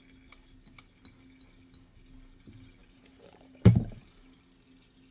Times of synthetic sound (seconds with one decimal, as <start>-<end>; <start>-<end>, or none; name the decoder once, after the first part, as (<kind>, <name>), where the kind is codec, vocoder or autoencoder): 2.8-4.4 (vocoder, BigVGAN v2)